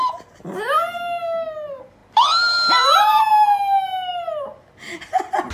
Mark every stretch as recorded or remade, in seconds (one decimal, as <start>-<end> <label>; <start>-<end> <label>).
0.0-5.5 recorded